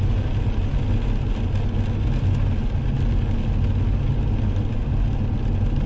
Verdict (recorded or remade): recorded